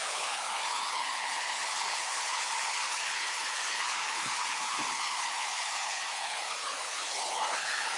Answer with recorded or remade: remade